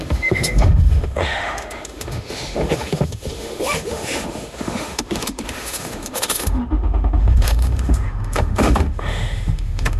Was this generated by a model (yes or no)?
yes